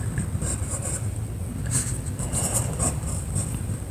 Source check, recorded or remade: recorded